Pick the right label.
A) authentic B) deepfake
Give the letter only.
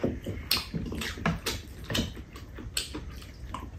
A